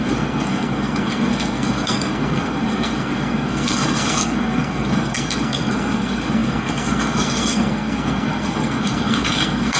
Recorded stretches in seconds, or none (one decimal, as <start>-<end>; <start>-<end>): none